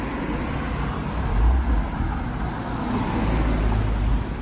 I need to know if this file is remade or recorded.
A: recorded